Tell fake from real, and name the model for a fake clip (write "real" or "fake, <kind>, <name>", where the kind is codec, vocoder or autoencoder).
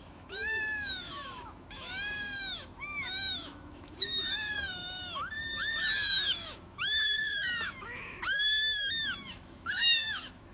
fake, autoencoder, DAC-VAE